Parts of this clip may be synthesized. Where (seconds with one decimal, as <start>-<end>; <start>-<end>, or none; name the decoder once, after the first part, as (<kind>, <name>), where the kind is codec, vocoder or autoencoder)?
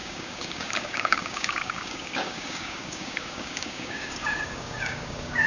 0.0-5.5 (codec, DAC)